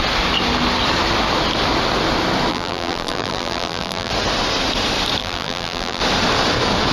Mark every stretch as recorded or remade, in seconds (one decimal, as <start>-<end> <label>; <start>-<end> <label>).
0.0-2.5 recorded; 2.5-4.1 remade; 4.1-5.2 recorded; 5.2-6.0 remade; 6.0-6.9 recorded